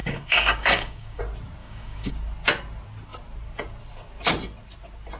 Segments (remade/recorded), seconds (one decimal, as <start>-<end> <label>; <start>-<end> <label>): 0.0-1.2 remade; 1.2-1.6 recorded; 1.6-2.1 remade; 2.1-5.2 recorded